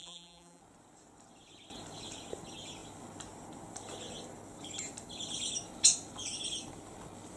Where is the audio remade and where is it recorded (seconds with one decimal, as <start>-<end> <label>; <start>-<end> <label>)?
0.0-0.6 remade; 0.6-7.4 recorded